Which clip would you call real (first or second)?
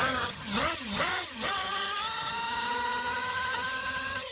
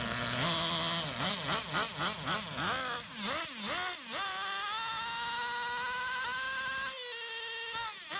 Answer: second